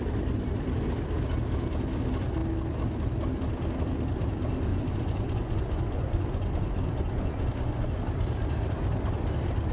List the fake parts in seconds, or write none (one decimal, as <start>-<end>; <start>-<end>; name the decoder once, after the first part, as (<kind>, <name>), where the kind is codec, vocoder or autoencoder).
4.7-8.0 (vocoder, Vocos)